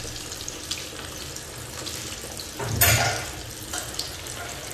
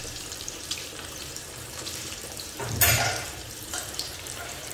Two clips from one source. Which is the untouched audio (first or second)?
first